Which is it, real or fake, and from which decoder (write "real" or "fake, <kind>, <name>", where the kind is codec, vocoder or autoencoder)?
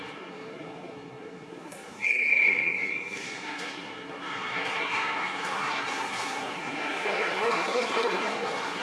fake, codec, SNAC